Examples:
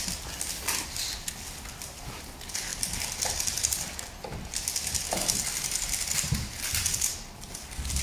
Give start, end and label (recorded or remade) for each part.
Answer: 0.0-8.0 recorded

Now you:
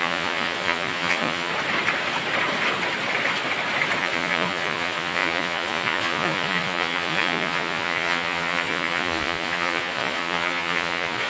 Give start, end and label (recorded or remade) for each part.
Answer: 0.0-1.5 remade; 1.5-4.0 recorded; 4.0-11.3 remade

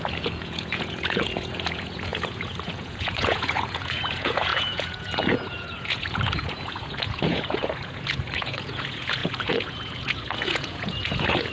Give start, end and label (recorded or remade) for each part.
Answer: 0.0-11.5 remade

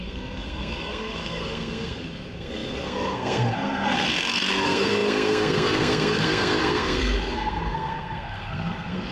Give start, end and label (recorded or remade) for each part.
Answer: 0.0-9.1 remade

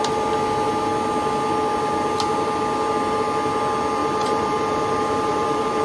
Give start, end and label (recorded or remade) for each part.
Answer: 0.0-4.0 recorded; 4.0-5.8 remade

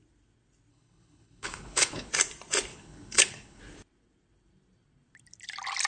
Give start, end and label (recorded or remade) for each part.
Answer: 0.0-0.7 recorded; 0.7-2.1 remade; 2.1-2.7 recorded; 2.7-3.6 remade; 3.6-5.9 recorded

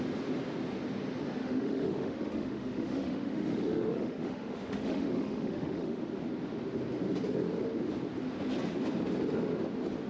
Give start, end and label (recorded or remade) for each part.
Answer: 0.0-1.4 recorded; 1.4-6.0 remade; 6.0-10.1 recorded